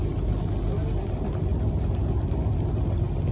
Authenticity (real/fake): real